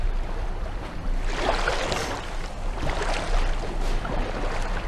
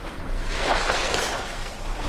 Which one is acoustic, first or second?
first